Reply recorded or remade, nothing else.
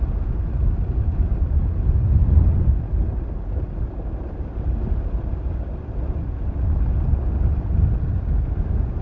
recorded